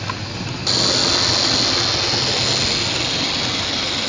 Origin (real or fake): real